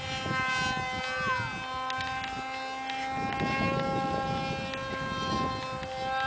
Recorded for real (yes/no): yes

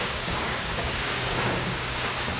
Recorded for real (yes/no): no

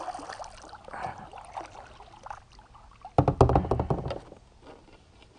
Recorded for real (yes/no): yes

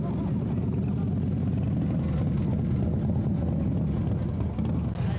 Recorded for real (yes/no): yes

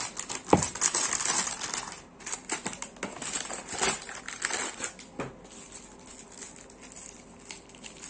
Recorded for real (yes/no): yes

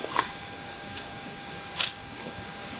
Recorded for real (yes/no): no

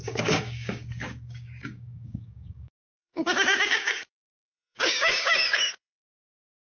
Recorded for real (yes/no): no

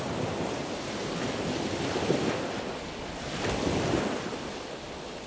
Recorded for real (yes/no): yes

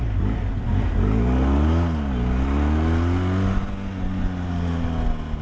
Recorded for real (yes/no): yes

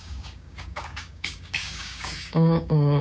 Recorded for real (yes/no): no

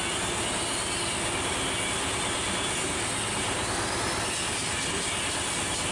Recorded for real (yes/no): yes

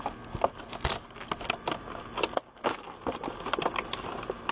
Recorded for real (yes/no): yes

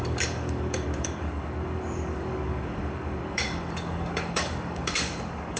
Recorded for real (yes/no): no